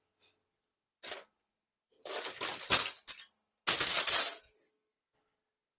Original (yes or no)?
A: yes